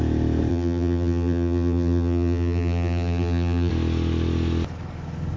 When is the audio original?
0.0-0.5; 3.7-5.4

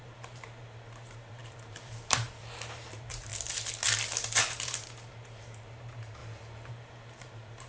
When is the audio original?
3.3-4.4; 6.2-6.7

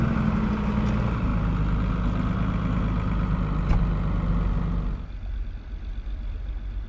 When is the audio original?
0.0-6.9

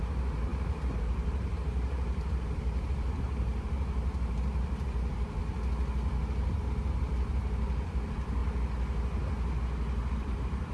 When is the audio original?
5.4-6.5; 8.4-10.1

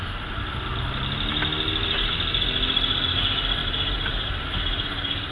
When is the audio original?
0.0-3.6